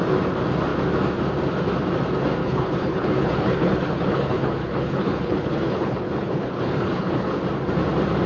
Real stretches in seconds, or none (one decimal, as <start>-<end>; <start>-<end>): 0.0-2.4; 7.4-8.3